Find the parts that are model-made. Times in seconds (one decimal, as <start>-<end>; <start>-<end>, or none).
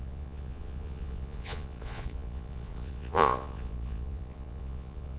0.0-5.2